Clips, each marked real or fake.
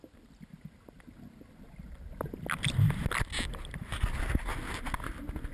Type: real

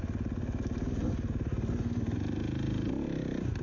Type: real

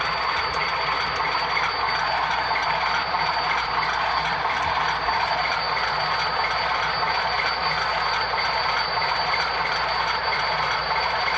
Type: fake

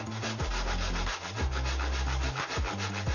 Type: real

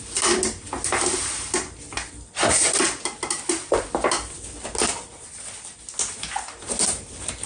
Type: real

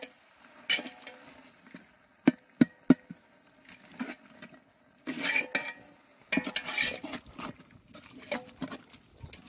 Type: real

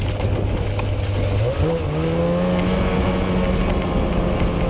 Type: real